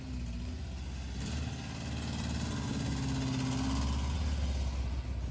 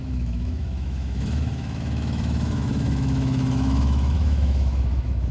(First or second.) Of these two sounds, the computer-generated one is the second